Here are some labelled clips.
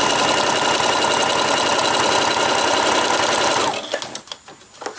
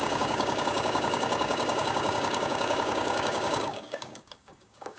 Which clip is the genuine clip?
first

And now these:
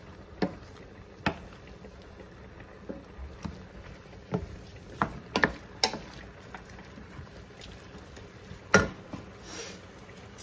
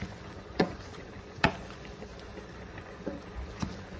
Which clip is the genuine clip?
first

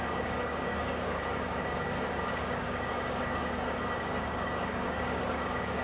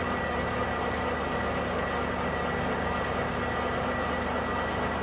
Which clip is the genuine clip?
second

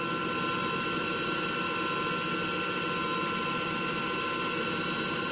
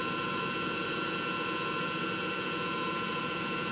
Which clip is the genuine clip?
first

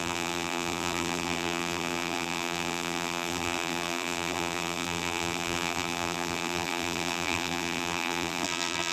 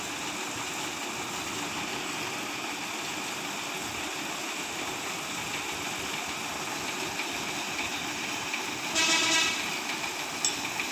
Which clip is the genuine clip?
second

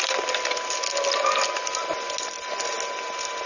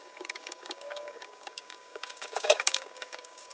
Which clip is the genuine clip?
first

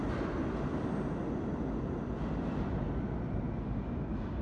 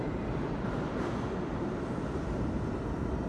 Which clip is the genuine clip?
first